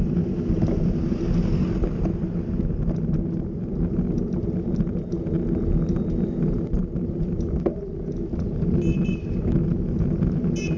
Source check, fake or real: real